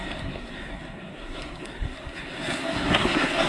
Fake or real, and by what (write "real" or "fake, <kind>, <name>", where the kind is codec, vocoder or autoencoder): fake, codec, SNAC